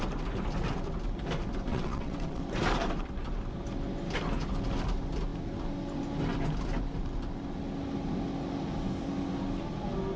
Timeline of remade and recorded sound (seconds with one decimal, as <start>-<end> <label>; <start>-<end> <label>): 0.0-1.7 recorded; 1.7-2.4 remade; 2.4-10.2 recorded